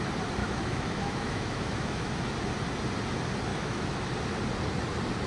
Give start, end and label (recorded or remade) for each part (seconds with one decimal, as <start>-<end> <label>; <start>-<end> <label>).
0.0-0.4 recorded; 0.4-2.1 remade; 2.1-3.5 recorded; 3.5-4.0 remade; 4.0-5.3 recorded